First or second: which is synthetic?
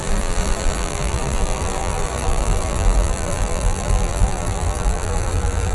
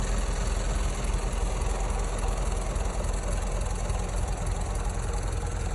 first